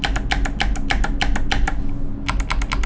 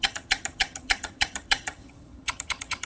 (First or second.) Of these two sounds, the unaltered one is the first